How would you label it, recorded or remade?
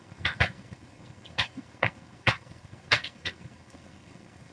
remade